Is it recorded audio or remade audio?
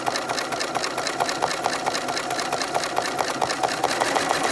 recorded